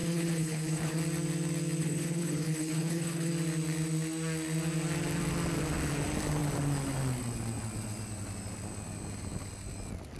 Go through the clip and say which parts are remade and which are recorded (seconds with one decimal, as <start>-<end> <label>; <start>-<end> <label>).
0.0-1.0 remade; 1.0-1.8 recorded; 1.8-3.3 remade; 3.3-10.2 recorded